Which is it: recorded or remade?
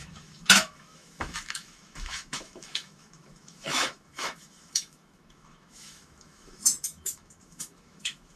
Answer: remade